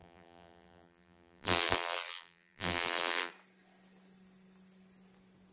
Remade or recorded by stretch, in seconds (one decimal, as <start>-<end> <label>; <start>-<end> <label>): 0.0-3.3 remade; 3.3-5.5 recorded